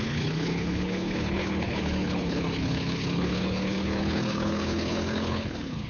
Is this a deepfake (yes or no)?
yes